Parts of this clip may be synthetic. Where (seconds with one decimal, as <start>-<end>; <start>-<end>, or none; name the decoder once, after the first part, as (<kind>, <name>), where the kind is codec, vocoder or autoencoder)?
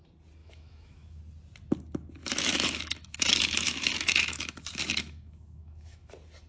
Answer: 0.4-1.2 (autoencoder, DAC-VAE); 2.2-6.1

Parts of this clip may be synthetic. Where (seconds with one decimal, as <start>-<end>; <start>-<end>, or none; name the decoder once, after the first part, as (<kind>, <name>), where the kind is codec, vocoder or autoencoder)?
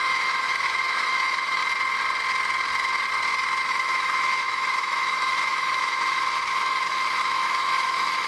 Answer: 0.0-1.6 (autoencoder, DAC-VAE); 3.6-8.3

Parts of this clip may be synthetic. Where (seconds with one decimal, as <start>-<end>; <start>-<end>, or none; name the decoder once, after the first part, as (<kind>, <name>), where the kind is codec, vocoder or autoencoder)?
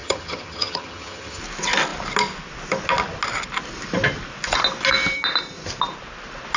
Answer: 0.0-1.4 (vocoder, HiFi-GAN)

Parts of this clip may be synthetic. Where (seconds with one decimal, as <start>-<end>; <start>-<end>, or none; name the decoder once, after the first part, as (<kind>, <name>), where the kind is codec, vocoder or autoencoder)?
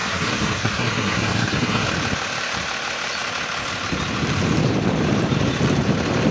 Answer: 0.0-1.9 (codec, SNAC)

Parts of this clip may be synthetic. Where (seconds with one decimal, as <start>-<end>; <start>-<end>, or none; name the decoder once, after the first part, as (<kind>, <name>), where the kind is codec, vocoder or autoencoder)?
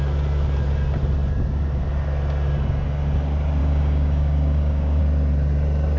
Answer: 3.6-5.0 (codec, DAC)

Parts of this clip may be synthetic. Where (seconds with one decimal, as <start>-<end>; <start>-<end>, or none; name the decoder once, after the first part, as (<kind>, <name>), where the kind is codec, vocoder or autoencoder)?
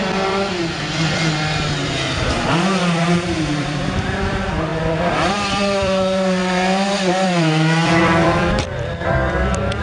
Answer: 0.0-4.7 (vocoder, BigVGAN v2); 5.3-9.8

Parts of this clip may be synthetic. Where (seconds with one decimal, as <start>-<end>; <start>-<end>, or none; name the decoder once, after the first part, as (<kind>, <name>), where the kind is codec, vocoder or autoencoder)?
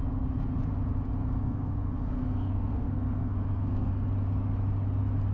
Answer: 1.2-3.9 (codec, SNAC)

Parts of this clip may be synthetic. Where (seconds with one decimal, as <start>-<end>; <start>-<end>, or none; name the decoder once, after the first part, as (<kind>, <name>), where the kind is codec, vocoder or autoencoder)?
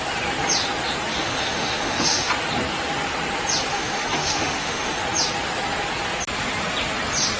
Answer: 1.1-2.3 (autoencoder, DAC-VAE); 3.7-5.0